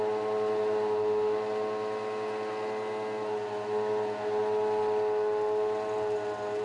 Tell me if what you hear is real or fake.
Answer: real